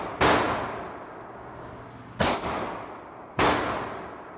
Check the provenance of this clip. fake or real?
real